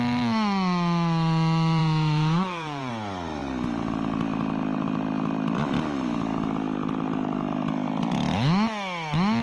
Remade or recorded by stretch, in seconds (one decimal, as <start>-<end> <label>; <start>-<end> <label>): 0.0-1.8 recorded; 1.8-2.9 remade; 2.9-9.4 recorded